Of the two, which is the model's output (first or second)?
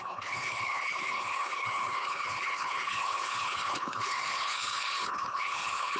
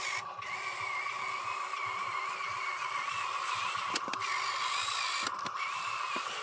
first